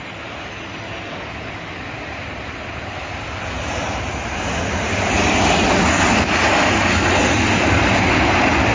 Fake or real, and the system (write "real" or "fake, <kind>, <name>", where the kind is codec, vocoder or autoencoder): real